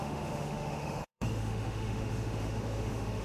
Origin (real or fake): fake